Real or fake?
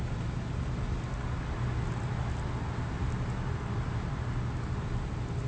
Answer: real